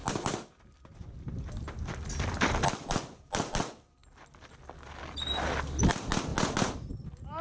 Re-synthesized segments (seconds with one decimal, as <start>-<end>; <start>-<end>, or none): none